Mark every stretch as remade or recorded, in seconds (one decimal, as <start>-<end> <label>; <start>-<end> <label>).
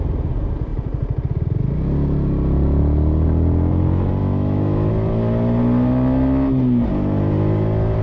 0.0-4.2 recorded; 4.2-4.9 remade; 4.9-8.0 recorded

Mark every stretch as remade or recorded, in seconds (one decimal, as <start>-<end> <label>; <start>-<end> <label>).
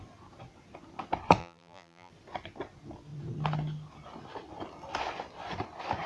0.0-1.4 recorded; 1.4-2.1 remade; 2.1-6.1 recorded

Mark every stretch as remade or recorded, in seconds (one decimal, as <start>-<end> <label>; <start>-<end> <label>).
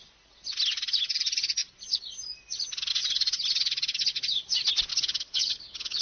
0.0-4.9 recorded; 4.9-6.0 remade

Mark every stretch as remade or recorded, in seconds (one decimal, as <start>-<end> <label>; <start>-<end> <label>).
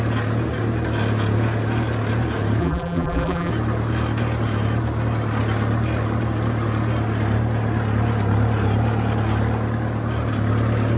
0.0-2.6 recorded; 2.6-3.5 remade; 3.5-11.0 recorded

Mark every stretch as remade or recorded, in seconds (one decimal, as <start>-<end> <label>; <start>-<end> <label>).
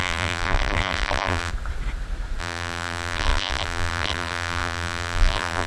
0.0-1.5 remade; 1.5-2.4 recorded; 2.4-5.7 remade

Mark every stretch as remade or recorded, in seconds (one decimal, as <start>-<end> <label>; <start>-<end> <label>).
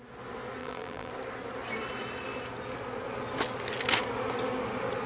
0.0-0.6 recorded; 0.6-1.1 remade; 1.1-5.1 recorded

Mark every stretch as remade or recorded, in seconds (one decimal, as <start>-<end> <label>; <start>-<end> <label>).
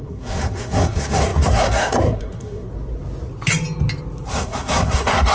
0.0-2.7 remade; 2.7-4.3 recorded; 4.3-5.3 remade